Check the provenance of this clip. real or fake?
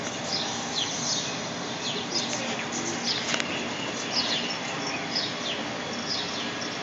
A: real